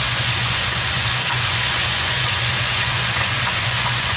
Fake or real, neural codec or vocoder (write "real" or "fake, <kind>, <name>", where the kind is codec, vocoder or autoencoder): fake, vocoder, Vocos